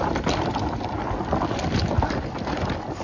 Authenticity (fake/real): real